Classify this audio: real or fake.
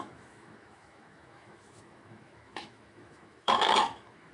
fake